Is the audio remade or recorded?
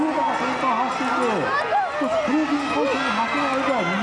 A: recorded